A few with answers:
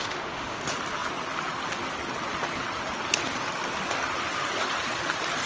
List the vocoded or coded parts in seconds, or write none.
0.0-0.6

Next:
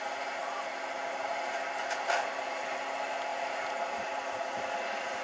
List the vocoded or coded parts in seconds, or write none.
none

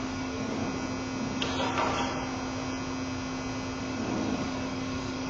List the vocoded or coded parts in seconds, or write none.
0.0-0.6; 3.8-5.3